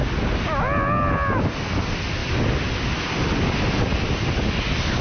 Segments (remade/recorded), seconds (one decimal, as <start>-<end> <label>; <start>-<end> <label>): 0.0-5.0 recorded